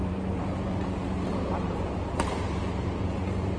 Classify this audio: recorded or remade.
remade